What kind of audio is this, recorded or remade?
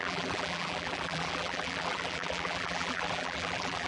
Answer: remade